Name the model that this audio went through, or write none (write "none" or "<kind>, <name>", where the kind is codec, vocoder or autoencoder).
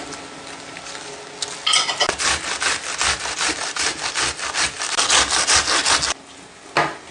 none